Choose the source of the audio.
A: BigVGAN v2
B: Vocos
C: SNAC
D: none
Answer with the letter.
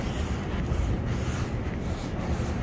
D